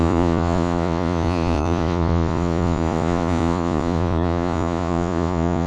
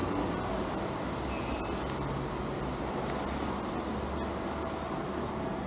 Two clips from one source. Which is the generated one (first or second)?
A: first